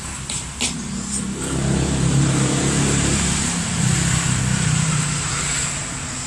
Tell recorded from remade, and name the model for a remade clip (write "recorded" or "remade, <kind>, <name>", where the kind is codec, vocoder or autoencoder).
remade, vocoder, BigVGAN v2